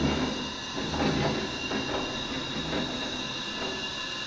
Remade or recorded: recorded